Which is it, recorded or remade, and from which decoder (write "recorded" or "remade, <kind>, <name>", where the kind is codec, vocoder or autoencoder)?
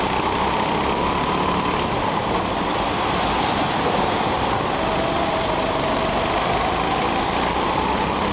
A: remade, vocoder, BigVGAN v2